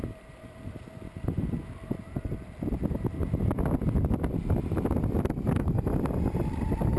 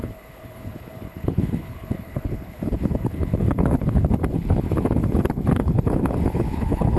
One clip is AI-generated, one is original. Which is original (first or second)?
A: first